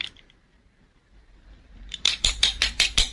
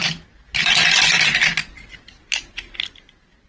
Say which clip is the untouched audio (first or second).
second